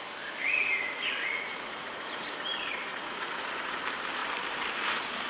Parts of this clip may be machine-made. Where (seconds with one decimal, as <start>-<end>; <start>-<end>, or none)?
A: 0.4-2.3; 2.9-3.8